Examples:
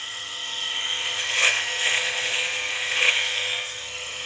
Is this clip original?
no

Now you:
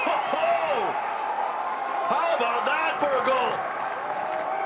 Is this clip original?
yes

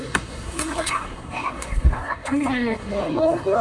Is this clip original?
no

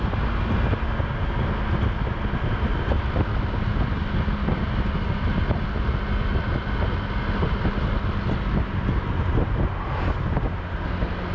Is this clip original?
yes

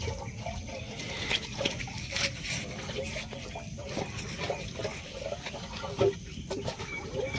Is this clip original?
yes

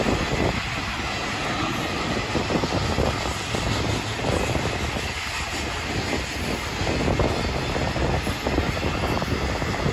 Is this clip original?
yes